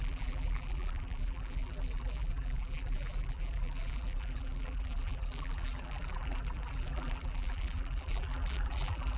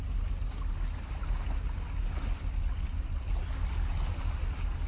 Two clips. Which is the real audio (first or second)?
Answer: second